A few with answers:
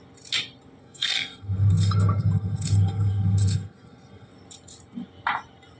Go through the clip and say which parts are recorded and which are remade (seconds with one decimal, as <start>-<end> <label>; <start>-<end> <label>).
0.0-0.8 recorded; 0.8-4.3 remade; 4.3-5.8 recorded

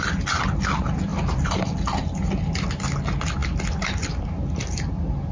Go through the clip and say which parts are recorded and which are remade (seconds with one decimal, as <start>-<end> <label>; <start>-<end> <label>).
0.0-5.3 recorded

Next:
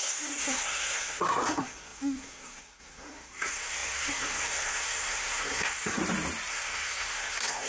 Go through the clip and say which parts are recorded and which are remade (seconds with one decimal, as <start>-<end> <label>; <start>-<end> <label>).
0.0-6.0 remade; 6.0-6.5 recorded; 6.5-7.7 remade